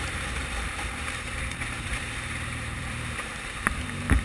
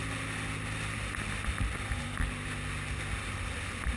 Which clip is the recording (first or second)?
second